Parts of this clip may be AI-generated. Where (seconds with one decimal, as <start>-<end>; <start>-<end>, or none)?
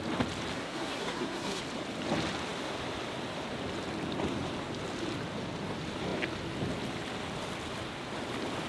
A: 0.6-1.6